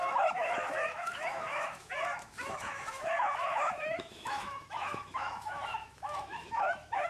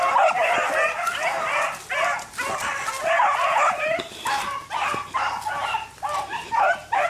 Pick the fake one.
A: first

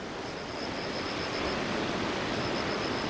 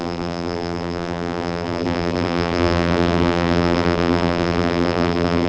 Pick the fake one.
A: second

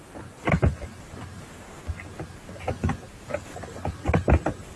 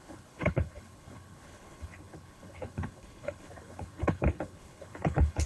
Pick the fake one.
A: second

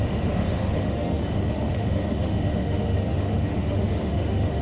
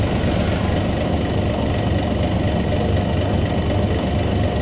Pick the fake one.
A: first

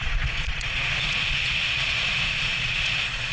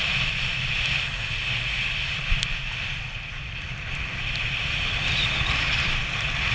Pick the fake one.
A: first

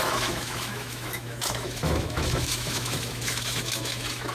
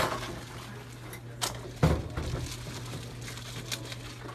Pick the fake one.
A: first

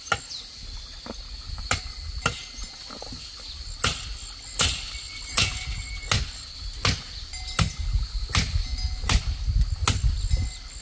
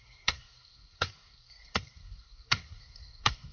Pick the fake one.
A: second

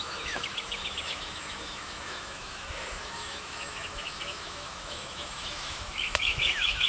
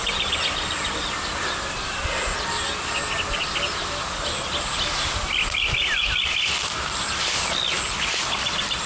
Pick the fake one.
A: first